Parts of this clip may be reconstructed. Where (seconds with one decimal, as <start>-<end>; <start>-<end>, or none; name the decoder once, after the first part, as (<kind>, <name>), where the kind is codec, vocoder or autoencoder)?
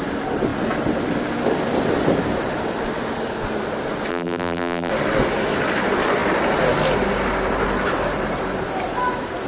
4.1-4.9 (vocoder, BigVGAN v2)